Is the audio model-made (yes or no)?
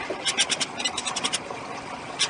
no